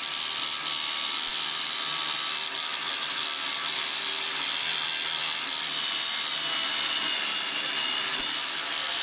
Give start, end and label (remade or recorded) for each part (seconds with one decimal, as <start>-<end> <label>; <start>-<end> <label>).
0.0-9.0 recorded